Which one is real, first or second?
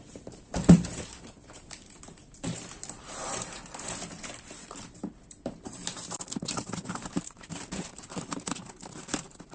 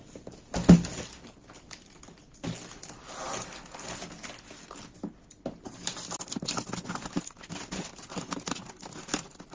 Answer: second